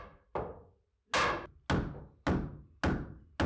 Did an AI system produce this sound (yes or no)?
no